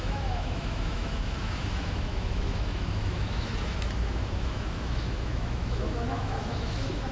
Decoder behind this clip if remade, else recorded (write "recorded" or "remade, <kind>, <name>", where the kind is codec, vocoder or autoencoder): remade, autoencoder, DAC-VAE